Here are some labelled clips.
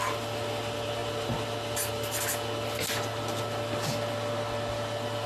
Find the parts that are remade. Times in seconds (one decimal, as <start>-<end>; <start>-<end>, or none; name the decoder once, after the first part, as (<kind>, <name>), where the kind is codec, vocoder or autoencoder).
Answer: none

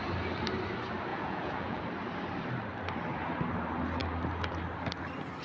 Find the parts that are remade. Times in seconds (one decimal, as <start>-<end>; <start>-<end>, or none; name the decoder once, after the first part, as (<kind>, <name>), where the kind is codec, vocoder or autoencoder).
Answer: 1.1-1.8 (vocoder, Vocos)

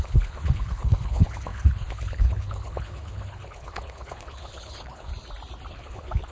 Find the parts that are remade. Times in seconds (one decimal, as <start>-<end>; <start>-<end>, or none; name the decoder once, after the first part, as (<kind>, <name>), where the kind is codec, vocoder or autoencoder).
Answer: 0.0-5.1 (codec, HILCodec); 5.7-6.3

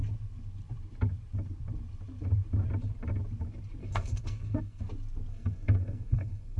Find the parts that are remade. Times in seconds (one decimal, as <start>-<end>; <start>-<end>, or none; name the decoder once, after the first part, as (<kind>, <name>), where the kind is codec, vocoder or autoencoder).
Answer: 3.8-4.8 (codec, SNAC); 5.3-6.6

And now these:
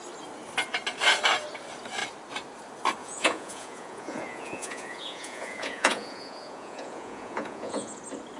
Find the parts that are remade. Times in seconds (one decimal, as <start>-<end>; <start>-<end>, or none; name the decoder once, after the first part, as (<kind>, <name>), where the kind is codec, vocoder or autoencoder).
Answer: 3.0-8.0 (vocoder, Vocos)

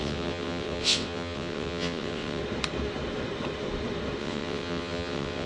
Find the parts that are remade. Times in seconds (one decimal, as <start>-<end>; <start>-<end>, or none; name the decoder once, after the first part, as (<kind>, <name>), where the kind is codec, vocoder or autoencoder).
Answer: 0.0-2.4 (vocoder, WaveNeXt); 4.2-5.5